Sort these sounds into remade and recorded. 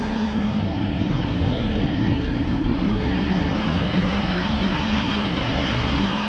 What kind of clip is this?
remade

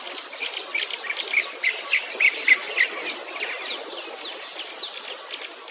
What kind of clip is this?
recorded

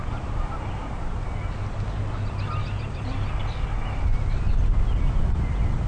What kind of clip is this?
recorded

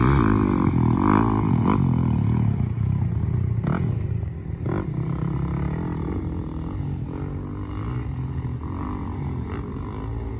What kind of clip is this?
recorded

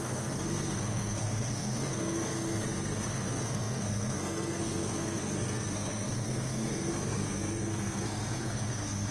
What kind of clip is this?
remade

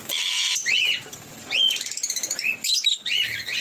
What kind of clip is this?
recorded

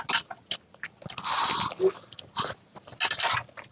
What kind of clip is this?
recorded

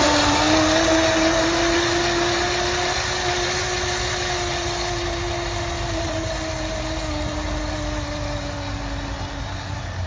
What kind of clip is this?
recorded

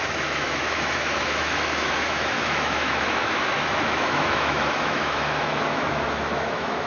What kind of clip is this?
remade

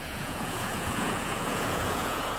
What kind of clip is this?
remade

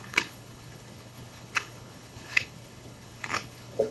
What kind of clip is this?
remade